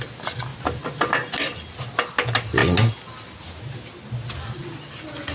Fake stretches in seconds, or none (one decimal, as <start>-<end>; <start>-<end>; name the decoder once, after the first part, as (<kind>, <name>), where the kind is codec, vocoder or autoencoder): none